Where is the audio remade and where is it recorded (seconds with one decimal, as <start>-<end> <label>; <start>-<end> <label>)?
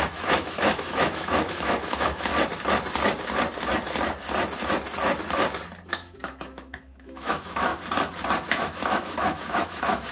0.0-2.3 remade; 2.3-5.9 recorded; 5.9-7.7 remade; 7.7-8.5 recorded; 8.5-10.1 remade